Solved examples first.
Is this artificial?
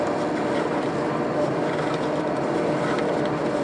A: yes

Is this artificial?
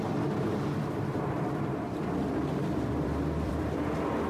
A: yes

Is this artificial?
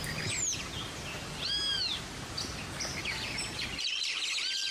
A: no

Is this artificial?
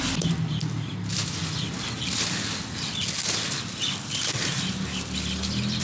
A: no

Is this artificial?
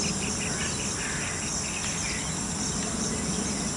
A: no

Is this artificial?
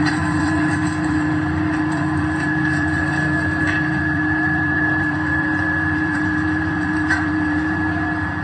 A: yes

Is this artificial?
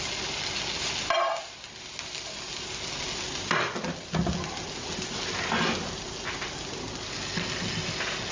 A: no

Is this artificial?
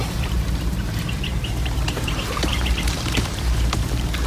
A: yes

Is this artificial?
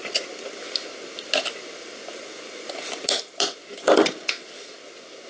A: yes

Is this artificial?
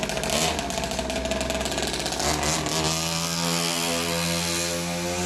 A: no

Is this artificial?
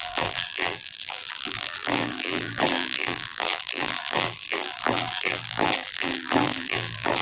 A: yes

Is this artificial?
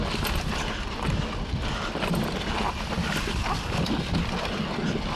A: no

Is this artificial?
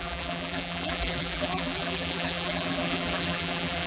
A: yes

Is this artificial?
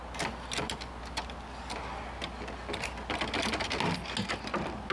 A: no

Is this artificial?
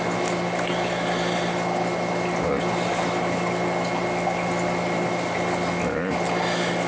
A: no